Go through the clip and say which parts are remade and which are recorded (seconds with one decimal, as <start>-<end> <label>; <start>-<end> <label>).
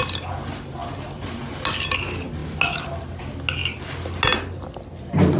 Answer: 0.0-5.4 recorded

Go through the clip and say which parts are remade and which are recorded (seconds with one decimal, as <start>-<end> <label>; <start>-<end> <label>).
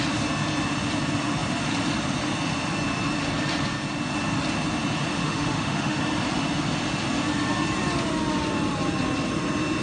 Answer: 0.0-5.1 recorded; 5.1-6.0 remade; 6.0-9.8 recorded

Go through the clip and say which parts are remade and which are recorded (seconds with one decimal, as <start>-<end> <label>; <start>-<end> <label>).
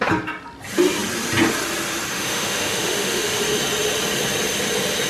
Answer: 0.0-2.1 recorded; 2.1-3.4 remade; 3.4-5.1 recorded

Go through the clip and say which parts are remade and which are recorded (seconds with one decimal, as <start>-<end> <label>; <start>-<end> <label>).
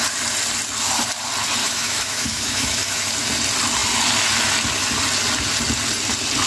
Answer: 0.0-1.6 recorded; 1.6-3.1 remade; 3.1-6.5 recorded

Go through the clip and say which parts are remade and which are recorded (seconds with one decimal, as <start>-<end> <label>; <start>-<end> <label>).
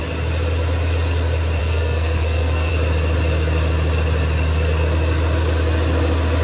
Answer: 0.0-1.6 recorded; 1.6-2.7 remade; 2.7-6.4 recorded